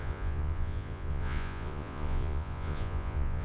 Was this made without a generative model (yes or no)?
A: no